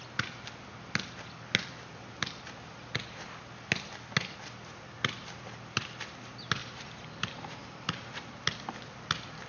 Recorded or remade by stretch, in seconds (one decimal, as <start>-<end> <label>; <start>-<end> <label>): 0.0-6.6 recorded; 6.6-8.4 remade; 8.4-9.5 recorded